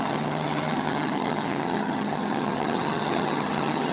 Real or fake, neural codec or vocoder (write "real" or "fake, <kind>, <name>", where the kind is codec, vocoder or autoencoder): fake, vocoder, HiFi-GAN